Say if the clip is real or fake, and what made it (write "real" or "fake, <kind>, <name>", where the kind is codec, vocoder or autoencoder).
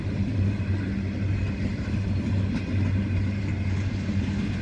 real